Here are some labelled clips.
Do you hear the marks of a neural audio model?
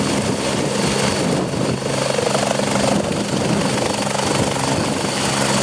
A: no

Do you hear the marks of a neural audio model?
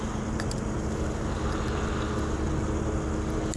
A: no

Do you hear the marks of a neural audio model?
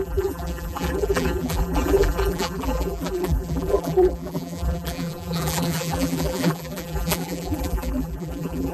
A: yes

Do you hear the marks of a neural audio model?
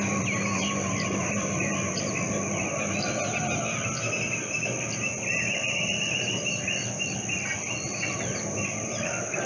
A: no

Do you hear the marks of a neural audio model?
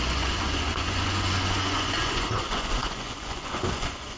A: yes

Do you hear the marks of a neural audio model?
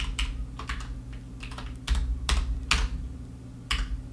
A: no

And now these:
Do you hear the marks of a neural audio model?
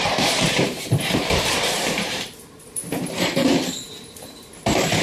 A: yes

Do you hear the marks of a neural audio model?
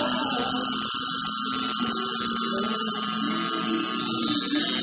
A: no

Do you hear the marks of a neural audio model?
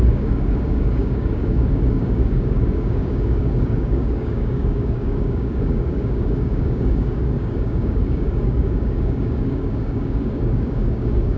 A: yes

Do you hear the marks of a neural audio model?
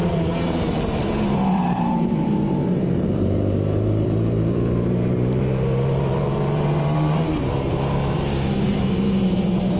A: yes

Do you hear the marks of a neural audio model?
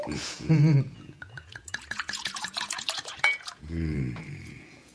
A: yes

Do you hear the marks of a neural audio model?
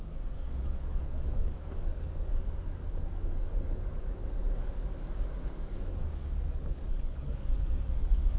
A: yes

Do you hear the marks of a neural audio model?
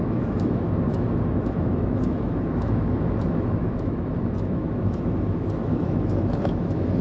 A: yes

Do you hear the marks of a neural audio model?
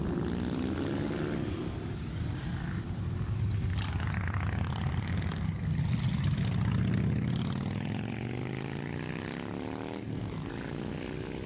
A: no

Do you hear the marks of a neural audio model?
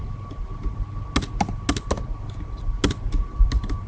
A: no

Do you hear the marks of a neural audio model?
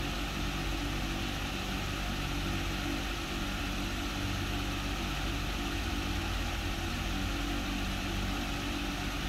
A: no